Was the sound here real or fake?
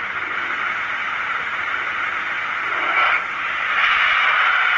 real